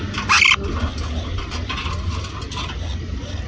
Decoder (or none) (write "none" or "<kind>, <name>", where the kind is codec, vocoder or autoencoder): none